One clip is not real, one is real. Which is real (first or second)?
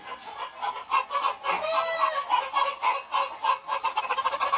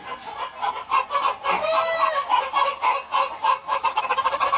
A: first